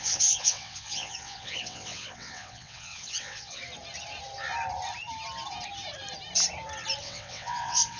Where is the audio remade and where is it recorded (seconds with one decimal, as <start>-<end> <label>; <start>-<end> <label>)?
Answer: 0.0-3.6 remade; 3.6-7.0 recorded; 7.0-8.0 remade